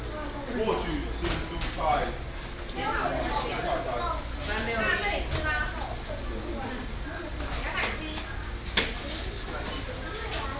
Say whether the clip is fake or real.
real